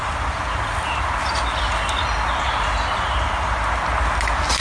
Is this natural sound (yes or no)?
yes